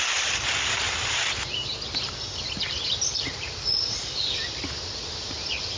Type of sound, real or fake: fake